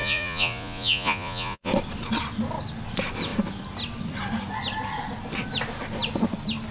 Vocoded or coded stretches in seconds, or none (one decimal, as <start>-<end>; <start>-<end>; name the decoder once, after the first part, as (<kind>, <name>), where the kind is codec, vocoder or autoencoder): 0.0-1.7 (vocoder, Vocos)